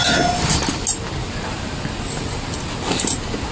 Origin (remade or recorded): recorded